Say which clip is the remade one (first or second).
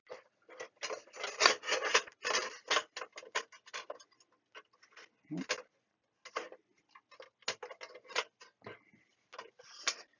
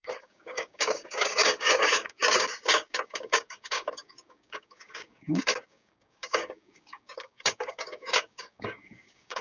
second